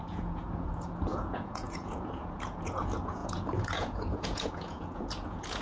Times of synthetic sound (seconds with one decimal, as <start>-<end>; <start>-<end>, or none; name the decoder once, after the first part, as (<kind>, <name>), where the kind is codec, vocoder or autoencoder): 0.0-5.6 (vocoder, Vocos)